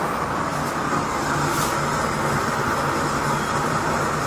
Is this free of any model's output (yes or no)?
yes